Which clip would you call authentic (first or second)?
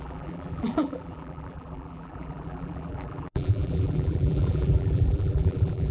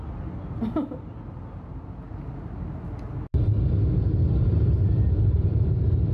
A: second